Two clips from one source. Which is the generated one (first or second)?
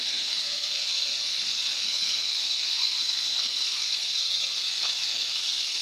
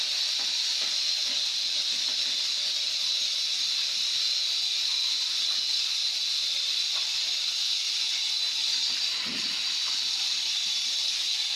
first